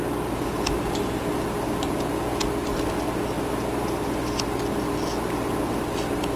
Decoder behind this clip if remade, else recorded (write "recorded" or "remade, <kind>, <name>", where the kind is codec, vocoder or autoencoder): recorded